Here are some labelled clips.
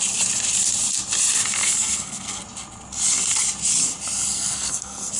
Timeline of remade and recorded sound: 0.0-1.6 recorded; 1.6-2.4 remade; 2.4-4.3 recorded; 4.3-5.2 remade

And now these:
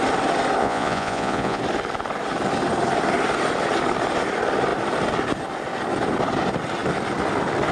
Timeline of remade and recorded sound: 0.0-0.6 recorded; 0.6-1.6 remade; 1.6-7.7 recorded

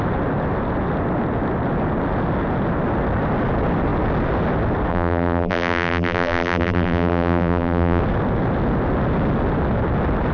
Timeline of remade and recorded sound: 0.0-4.9 recorded; 4.9-8.0 remade; 8.0-10.3 recorded